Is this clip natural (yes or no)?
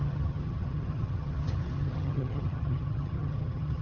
no